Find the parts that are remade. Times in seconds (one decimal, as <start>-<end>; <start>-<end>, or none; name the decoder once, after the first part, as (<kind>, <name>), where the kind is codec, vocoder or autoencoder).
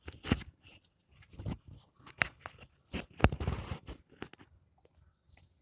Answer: none